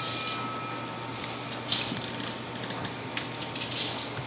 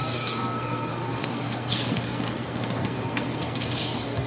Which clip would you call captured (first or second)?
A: first